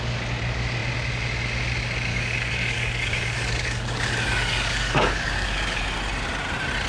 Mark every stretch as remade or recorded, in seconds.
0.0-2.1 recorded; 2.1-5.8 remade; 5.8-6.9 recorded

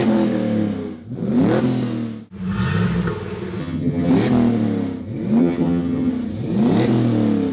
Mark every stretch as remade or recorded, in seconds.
0.0-3.6 recorded; 3.6-4.1 remade; 4.1-5.4 recorded; 5.4-6.1 remade; 6.1-7.5 recorded

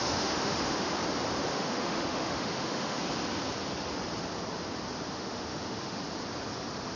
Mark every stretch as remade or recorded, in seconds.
0.0-0.9 remade; 0.9-1.5 recorded; 1.5-3.0 remade; 3.0-5.1 recorded; 5.1-6.0 remade; 6.0-7.0 recorded

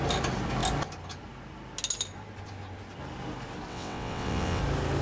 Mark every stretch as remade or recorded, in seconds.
0.0-3.7 recorded; 3.7-4.6 remade; 4.6-5.0 recorded

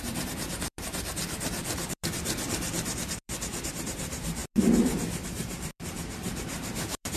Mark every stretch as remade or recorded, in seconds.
0.0-7.2 remade

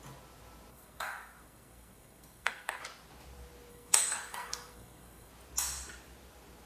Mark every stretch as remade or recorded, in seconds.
0.0-0.7 recorded; 0.7-2.8 remade; 2.8-3.7 recorded; 3.7-5.3 remade; 5.3-6.7 recorded

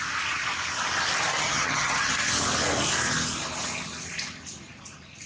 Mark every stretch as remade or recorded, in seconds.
0.0-1.3 recorded; 1.3-2.1 remade; 2.1-5.3 recorded